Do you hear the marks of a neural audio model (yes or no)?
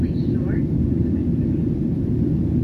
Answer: no